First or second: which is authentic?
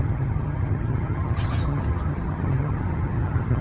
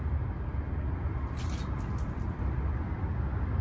second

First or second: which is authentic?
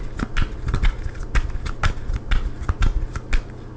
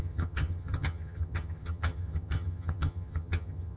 first